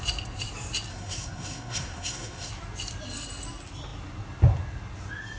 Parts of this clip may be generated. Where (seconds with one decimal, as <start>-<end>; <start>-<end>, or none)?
0.9-2.5